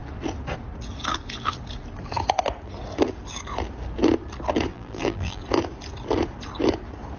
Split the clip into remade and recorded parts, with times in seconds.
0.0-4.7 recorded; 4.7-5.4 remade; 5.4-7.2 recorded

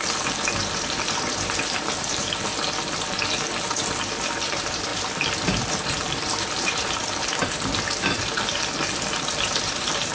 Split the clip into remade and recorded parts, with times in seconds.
0.0-2.5 remade; 2.5-4.4 recorded; 4.4-4.9 remade; 4.9-5.7 recorded; 5.7-7.1 remade; 7.1-9.2 recorded; 9.2-10.1 remade

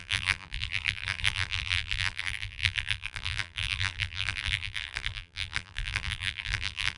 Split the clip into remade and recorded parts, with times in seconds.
0.0-7.0 remade